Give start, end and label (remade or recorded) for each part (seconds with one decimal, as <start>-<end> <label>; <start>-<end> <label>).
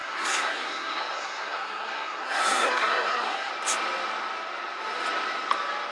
0.0-3.5 remade; 3.5-5.9 recorded